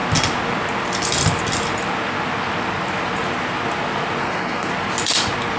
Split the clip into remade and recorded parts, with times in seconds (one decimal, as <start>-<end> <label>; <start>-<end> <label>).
0.0-4.2 recorded; 4.2-4.7 remade; 4.7-5.6 recorded